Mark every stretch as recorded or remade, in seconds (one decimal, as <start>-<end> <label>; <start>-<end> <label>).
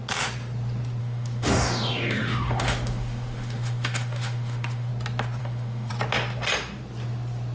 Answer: 0.0-1.0 recorded; 1.0-4.9 remade; 4.9-5.4 recorded; 5.4-5.9 remade; 5.9-7.5 recorded